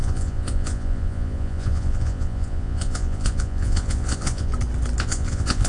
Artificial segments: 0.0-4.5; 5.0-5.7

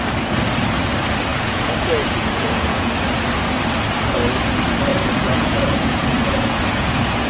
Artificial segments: 1.3-2.9; 4.9-7.3

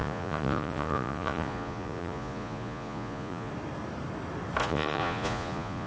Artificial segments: 0.0-3.5; 4.6-5.9

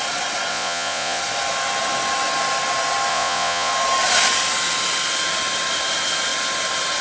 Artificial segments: 0.5-1.2; 3.1-3.7